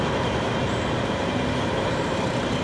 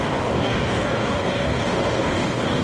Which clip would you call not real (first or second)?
second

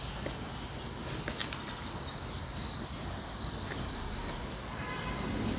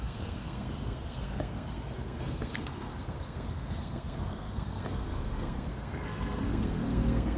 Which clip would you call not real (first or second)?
second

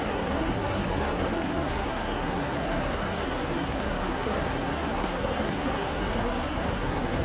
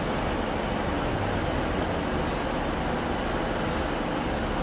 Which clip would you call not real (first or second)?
first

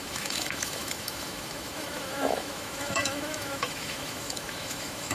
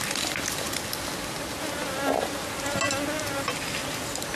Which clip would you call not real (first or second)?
first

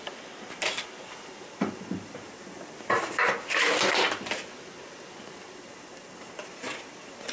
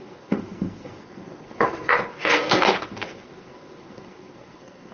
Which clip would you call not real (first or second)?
second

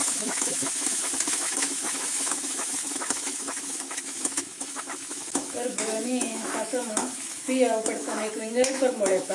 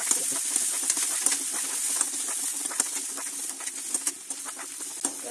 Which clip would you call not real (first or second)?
first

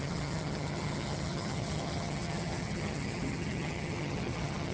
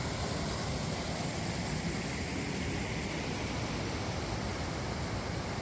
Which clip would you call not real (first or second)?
first